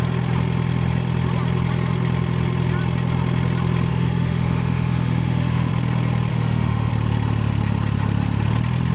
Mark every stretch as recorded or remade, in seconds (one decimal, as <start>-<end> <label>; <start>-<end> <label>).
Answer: 0.0-3.9 recorded; 3.9-5.7 remade; 5.7-6.3 recorded; 6.3-6.9 remade; 6.9-8.9 recorded